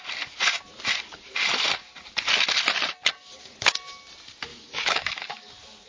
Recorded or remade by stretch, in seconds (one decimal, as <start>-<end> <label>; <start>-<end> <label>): 0.0-4.5 recorded; 4.5-5.4 remade; 5.4-5.9 recorded